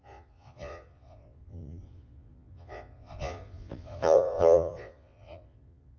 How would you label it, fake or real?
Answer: fake